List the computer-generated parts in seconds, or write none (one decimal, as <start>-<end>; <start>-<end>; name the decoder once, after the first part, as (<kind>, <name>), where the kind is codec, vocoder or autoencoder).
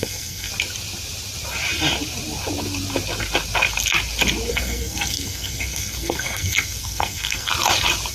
0.0-0.5 (codec, SNAC); 4.5-7.5